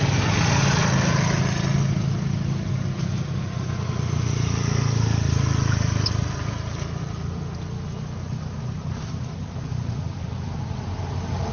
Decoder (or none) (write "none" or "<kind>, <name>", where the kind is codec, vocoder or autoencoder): none